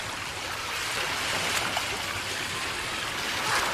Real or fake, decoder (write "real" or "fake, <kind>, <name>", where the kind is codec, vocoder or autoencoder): real